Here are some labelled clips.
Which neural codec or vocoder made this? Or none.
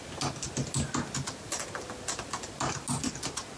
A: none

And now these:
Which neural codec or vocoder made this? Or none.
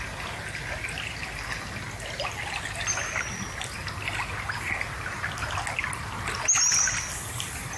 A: none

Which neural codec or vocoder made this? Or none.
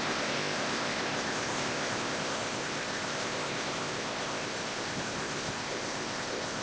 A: codec, ZipCodec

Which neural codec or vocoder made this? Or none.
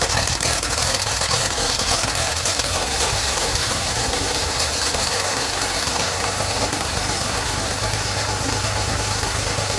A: codec, SNAC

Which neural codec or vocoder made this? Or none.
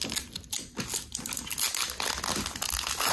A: none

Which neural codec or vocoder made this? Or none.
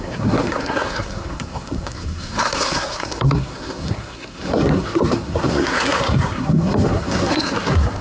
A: codec, SNAC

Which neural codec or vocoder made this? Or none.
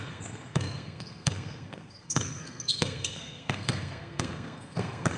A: codec, SNAC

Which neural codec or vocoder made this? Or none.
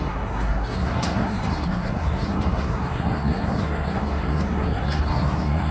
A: codec, SNAC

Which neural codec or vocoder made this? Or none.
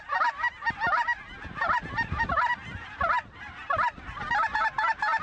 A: vocoder, BigVGAN v2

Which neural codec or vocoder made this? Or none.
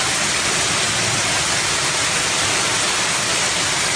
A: none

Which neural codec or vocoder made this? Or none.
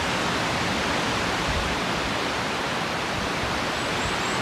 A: none